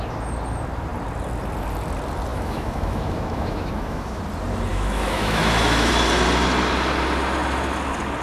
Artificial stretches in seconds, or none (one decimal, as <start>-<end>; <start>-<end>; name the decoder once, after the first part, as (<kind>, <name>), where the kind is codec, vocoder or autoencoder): 2.3-4.2 (autoencoder, DAC-VAE); 4.7-5.9